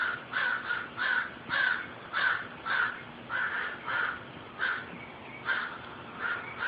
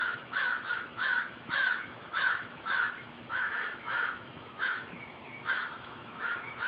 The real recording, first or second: first